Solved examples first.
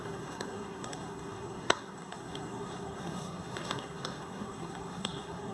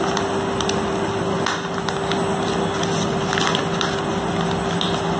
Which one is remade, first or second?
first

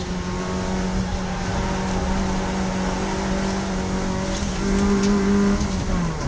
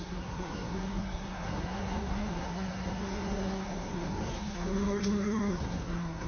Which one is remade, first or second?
second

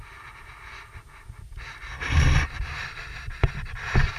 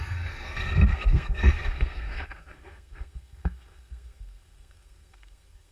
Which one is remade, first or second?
second